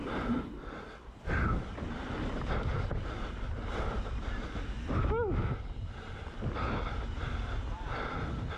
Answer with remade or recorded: recorded